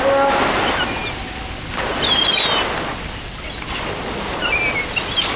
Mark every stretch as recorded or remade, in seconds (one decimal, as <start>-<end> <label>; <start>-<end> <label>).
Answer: 0.0-5.4 recorded